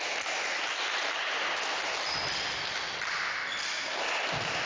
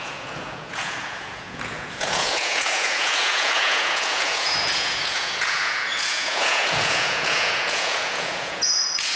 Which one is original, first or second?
first